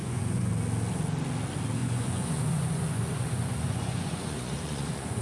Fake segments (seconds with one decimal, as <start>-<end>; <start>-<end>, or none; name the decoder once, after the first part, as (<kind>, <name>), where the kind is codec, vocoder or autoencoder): 0.0-0.5 (vocoder, Vocos); 1.8-5.2